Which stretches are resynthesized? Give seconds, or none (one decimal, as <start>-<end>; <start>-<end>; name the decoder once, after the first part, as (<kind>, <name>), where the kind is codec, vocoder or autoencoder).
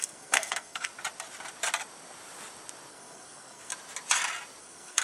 0.0-0.9 (codec, SNAC); 2.9-3.7; 4.6-5.0